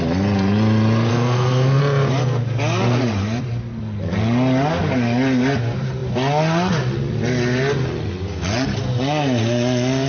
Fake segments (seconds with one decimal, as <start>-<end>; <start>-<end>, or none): 1.1-1.8